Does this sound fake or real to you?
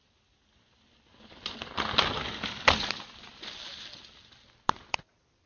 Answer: real